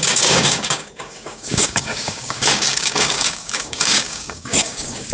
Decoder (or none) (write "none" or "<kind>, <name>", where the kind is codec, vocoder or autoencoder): codec, DAC